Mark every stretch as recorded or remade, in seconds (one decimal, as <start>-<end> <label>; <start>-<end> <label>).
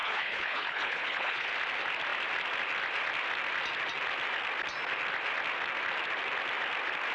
0.0-1.5 remade; 1.5-7.1 recorded